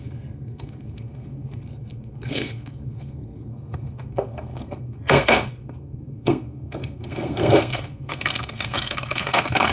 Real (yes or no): no